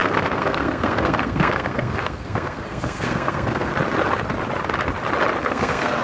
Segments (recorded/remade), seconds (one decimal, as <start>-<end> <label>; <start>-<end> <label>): 0.0-3.7 remade; 3.7-5.4 recorded; 5.4-6.0 remade